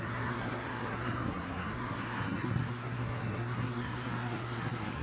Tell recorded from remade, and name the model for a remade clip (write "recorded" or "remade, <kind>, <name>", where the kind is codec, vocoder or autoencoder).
remade, codec, SNAC